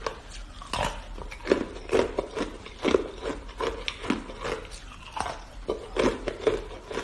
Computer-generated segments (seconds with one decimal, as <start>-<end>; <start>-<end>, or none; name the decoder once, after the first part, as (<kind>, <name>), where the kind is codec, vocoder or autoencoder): none